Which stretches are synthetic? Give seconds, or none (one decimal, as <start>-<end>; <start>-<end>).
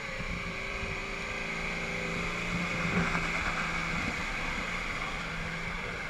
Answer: 0.0-1.0; 4.7-6.1